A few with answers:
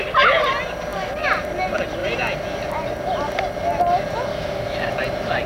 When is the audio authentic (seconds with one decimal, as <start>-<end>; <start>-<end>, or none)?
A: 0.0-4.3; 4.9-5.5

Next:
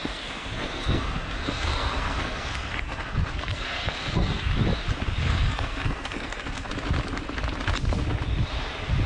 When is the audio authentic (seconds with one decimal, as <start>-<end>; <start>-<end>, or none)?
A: 4.5-5.2; 6.7-9.1

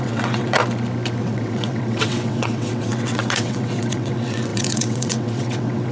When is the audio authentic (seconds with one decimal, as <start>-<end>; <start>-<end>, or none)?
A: 0.6-1.2

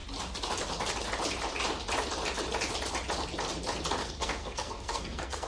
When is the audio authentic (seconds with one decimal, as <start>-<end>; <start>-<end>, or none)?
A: 0.0-4.0

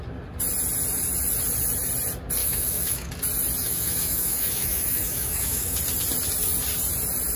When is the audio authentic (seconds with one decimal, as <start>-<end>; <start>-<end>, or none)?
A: 0.0-2.4; 3.1-3.6; 5.8-7.4